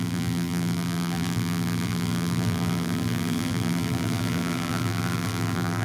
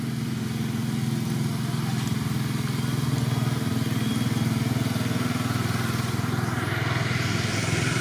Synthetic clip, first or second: first